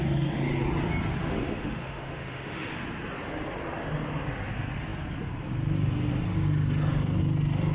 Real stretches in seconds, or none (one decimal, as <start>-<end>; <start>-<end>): 0.0-1.2; 2.7-7.7